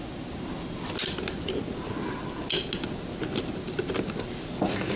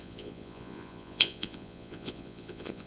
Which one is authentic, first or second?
first